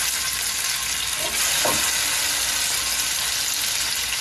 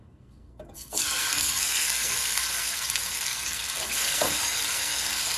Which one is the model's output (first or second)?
second